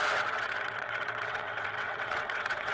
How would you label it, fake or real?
fake